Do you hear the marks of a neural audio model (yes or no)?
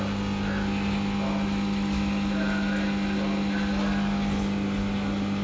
no